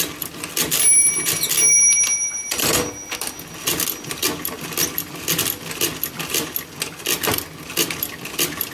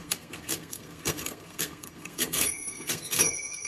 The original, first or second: first